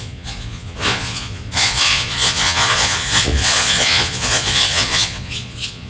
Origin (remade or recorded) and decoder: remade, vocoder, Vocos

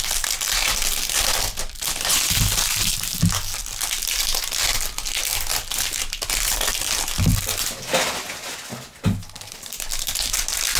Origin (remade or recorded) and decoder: recorded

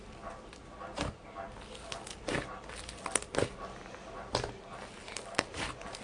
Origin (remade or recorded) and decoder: recorded